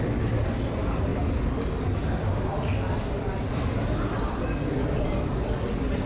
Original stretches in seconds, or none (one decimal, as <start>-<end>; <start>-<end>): 0.0-6.1